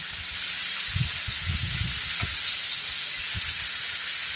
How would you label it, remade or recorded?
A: recorded